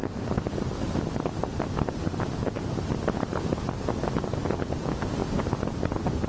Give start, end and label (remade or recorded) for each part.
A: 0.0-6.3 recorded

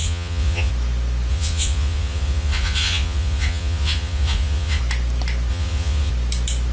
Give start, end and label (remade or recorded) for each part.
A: 0.0-0.7 remade; 0.7-1.3 recorded; 1.3-4.8 remade; 4.8-5.5 recorded; 5.5-6.1 remade; 6.1-6.7 recorded

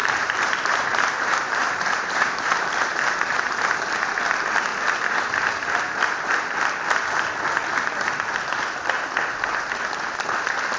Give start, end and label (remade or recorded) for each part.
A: 0.0-3.0 remade; 3.0-10.8 recorded

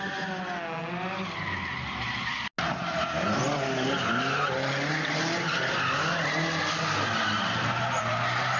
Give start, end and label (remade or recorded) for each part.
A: 0.0-8.6 recorded

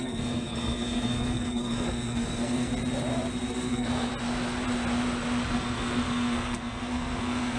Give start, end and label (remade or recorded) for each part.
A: 0.0-2.7 remade; 2.7-3.5 recorded; 3.5-4.1 remade; 4.1-5.5 recorded; 5.5-7.6 remade